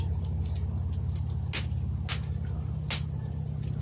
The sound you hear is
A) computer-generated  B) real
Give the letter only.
B